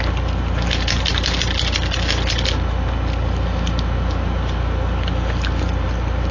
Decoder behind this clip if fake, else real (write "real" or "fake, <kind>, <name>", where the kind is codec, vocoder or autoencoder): real